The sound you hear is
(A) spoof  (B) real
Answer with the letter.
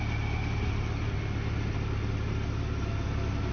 B